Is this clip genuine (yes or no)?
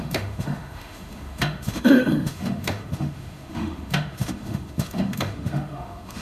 no